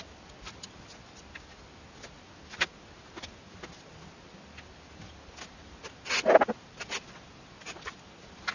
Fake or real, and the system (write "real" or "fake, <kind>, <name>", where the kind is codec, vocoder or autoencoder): real